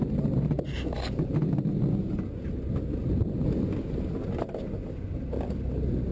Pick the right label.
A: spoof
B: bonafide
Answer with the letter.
B